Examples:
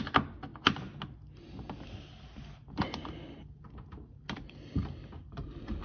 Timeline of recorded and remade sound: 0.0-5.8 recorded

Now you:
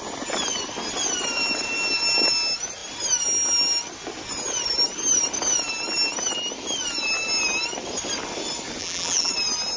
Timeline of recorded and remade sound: 0.0-8.8 recorded; 8.8-9.3 remade; 9.3-9.8 recorded

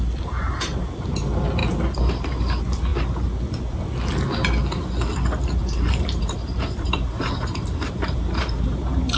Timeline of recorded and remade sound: 0.0-5.6 recorded; 5.6-9.2 remade

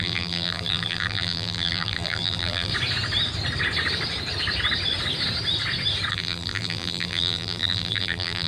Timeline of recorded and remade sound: 0.0-2.7 remade; 2.7-6.1 recorded; 6.1-8.5 remade

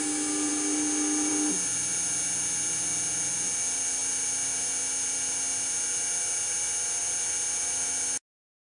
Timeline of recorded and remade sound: 0.0-8.7 recorded

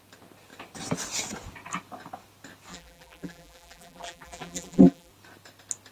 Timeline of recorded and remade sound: 0.0-2.7 recorded; 2.7-5.1 remade; 5.1-5.9 recorded